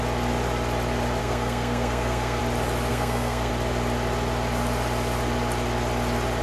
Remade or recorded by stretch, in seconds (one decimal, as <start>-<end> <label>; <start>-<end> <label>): 0.0-1.2 recorded; 1.2-2.4 remade; 2.4-2.9 recorded; 2.9-3.5 remade; 3.5-6.4 recorded